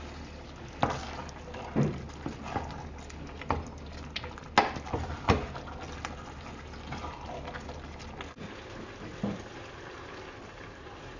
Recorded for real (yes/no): yes